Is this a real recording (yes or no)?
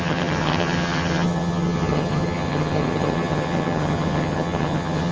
no